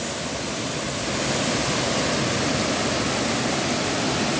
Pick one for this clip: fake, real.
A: real